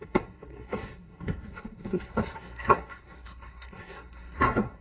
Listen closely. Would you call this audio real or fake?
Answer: fake